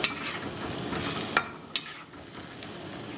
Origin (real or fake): real